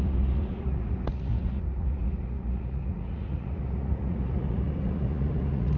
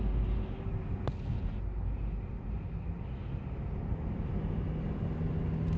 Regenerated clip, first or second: first